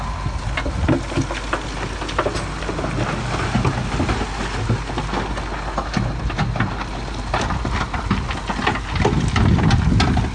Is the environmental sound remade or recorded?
recorded